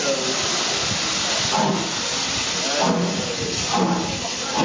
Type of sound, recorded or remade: recorded